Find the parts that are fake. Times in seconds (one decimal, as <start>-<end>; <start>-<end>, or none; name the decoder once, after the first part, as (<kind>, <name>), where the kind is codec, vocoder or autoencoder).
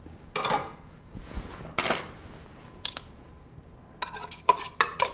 0.6-1.6 (vocoder, Vocos); 2.5-3.3